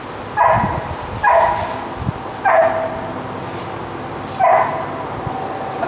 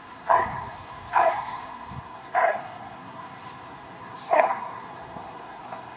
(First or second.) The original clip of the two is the first